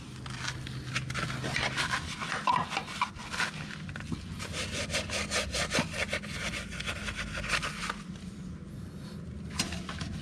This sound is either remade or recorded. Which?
recorded